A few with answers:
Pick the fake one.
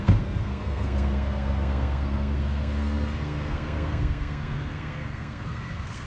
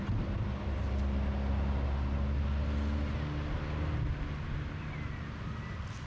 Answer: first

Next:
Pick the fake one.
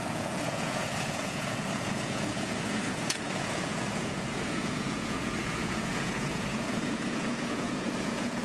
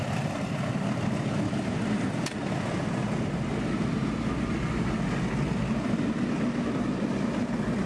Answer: first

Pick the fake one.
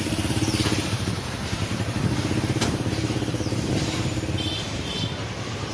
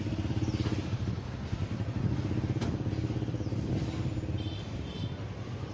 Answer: first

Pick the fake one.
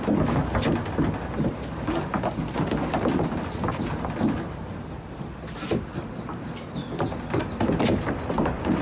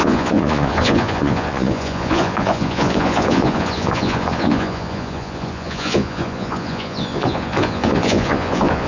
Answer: second